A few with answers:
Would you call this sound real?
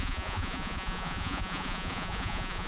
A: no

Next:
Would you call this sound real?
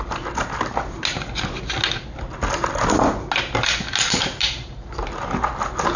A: yes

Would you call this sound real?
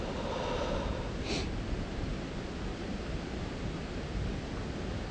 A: yes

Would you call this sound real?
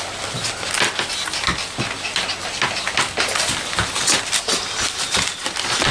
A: yes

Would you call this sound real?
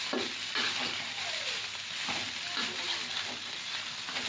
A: yes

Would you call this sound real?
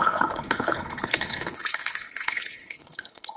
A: no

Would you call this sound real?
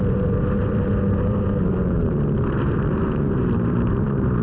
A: no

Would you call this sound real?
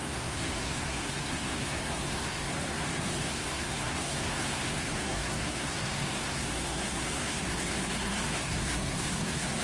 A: no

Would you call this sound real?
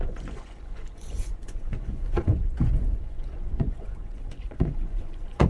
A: no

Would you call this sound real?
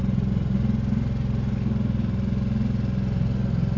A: yes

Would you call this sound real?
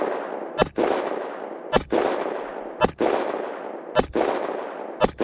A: yes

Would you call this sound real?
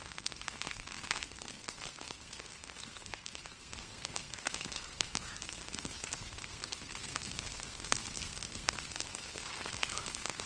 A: no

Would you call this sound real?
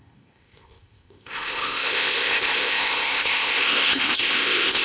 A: no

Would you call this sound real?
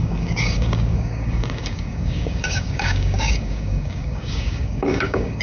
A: no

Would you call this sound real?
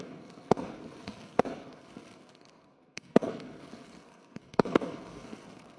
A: no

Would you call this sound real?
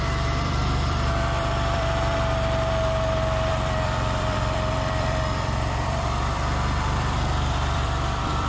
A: no